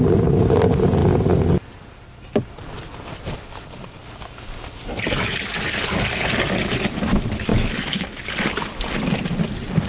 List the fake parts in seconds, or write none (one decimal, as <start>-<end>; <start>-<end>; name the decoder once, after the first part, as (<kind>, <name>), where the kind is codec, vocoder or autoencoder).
7.5-8.2 (autoencoder, DAC-VAE)